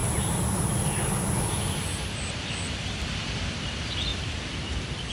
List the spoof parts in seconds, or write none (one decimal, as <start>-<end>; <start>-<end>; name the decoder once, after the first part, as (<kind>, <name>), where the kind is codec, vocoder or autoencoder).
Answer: 1.9-2.5 (vocoder, BigVGAN v2); 4.1-5.1